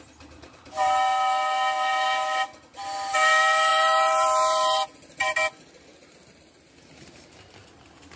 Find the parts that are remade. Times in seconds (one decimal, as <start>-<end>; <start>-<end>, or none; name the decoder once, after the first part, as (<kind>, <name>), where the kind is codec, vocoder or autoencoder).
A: none